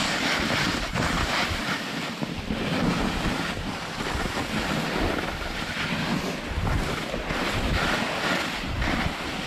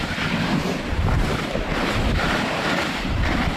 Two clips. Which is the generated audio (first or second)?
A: second